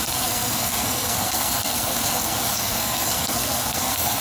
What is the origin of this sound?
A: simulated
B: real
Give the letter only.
A